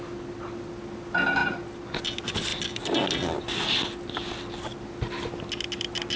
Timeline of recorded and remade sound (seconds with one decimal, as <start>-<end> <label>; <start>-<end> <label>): 0.0-6.2 recorded